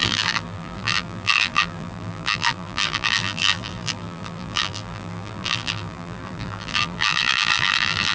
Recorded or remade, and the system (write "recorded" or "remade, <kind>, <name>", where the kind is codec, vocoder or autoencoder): remade, vocoder, BigVGAN v2